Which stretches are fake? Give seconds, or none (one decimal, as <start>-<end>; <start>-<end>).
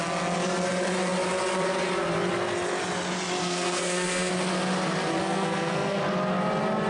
3.4-4.3; 5.2-6.0